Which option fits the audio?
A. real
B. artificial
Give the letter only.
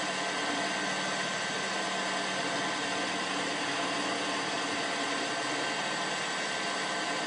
A